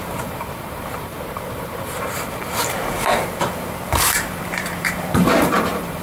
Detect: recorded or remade remade